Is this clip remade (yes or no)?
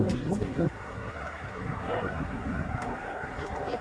yes